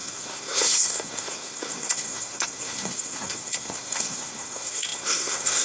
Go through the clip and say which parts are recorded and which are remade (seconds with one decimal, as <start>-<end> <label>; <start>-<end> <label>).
0.0-5.6 remade